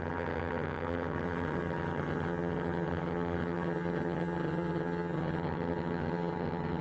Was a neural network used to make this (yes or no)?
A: yes